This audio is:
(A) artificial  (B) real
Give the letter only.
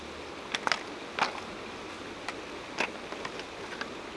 B